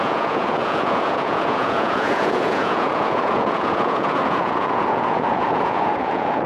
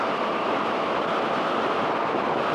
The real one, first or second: second